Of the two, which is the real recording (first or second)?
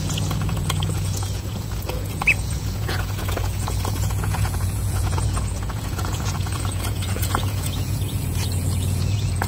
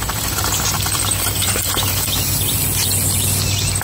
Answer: second